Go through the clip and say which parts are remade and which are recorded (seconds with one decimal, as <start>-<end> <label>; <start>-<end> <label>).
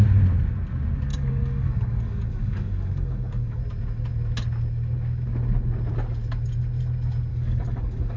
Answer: 0.0-1.1 recorded; 1.1-3.6 remade; 3.6-7.3 recorded; 7.3-8.2 remade